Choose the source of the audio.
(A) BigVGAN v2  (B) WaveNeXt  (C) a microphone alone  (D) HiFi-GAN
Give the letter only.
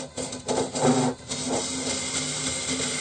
C